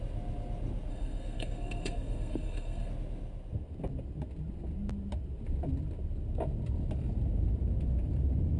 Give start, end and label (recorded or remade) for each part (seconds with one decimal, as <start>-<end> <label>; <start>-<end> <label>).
0.0-0.9 recorded; 0.9-2.9 remade; 2.9-8.6 recorded